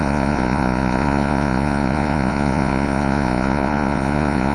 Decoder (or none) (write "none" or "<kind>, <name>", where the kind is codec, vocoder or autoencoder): vocoder, Vocos